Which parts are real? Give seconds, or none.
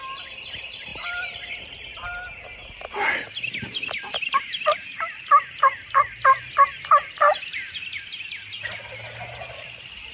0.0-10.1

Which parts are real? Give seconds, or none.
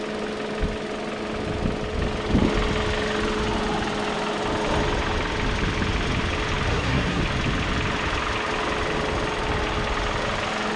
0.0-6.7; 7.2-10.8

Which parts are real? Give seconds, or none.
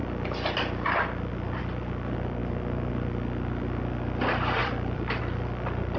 0.0-4.6; 5.2-6.0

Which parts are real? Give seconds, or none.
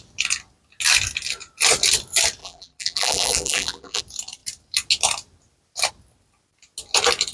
0.0-2.4; 4.0-7.3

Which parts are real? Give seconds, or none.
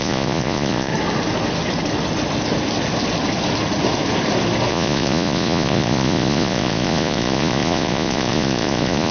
0.9-4.7